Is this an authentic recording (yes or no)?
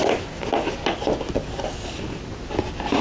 yes